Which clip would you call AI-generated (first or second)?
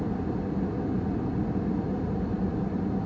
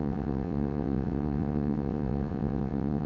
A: second